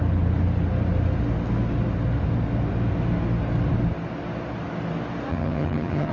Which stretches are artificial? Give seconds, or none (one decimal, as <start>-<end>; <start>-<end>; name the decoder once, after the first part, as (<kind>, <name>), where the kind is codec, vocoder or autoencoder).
5.3-6.1 (vocoder, HiFi-GAN)